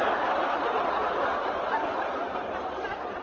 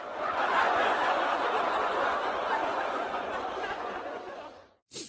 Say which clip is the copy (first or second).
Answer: second